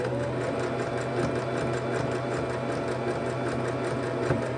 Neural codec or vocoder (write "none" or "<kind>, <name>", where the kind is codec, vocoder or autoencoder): none